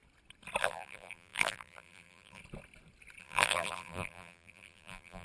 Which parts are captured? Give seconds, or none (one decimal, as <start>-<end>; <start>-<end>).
0.0-0.6; 2.4-3.2